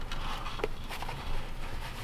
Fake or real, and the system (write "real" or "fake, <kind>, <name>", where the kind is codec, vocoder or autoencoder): real